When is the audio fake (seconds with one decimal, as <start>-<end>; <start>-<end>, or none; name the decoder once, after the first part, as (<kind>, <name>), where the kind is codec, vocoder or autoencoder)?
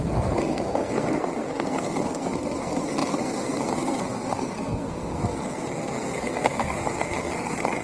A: 0.0-7.8 (codec, SNAC)